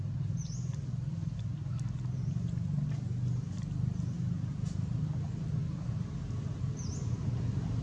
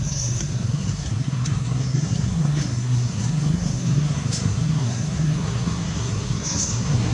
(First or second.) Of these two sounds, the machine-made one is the second